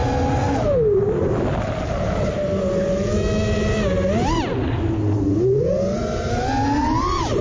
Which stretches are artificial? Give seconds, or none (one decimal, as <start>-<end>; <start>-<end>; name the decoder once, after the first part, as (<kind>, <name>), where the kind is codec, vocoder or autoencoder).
none